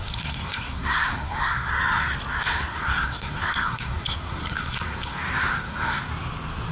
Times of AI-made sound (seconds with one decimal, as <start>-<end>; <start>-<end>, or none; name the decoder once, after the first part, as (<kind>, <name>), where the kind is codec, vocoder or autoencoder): 0.0-1.7 (codec, SNAC); 2.3-6.1

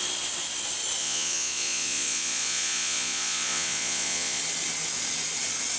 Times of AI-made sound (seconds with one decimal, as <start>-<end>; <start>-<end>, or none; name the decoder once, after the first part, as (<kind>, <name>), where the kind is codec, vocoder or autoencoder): 1.0-4.4 (vocoder, Vocos)

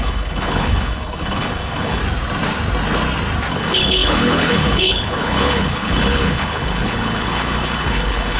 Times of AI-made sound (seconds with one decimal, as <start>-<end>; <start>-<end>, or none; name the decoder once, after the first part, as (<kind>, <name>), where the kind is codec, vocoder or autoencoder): 0.0-2.0 (codec, HILCodec); 3.5-8.4

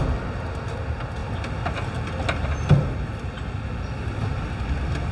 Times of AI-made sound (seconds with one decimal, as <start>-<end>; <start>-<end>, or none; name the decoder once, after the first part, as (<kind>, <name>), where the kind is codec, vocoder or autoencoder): none

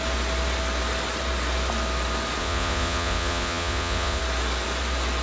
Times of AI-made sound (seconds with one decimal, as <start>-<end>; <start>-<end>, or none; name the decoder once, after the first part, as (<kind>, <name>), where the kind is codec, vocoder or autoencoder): 2.4-4.2 (vocoder, Vocos)

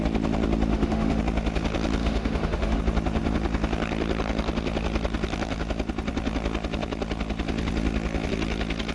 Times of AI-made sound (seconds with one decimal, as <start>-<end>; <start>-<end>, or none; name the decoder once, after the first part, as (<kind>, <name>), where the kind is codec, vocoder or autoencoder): 0.7-1.2 (autoencoder, DAC-VAE); 2.0-2.8